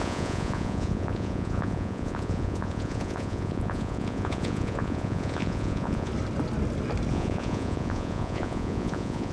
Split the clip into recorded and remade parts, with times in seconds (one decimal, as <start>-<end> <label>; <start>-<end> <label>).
0.0-6.1 remade; 6.1-7.1 recorded; 7.1-9.3 remade

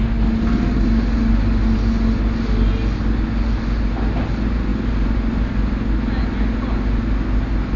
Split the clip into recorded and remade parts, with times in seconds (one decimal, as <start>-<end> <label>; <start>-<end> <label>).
0.0-7.8 recorded

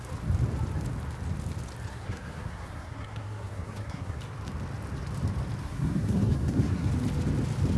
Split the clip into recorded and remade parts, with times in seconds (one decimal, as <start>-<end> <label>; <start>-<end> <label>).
0.0-1.9 recorded; 1.9-4.2 remade; 4.2-5.6 recorded; 5.6-6.9 remade; 6.9-7.8 recorded